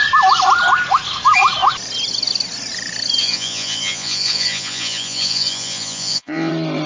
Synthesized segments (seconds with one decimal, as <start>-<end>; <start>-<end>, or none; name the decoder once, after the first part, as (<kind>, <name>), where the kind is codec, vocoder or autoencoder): 3.2-6.5 (vocoder, Vocos)